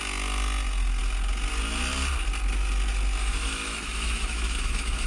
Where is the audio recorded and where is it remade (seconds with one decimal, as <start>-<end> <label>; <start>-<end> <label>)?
0.0-3.2 recorded; 3.2-5.1 remade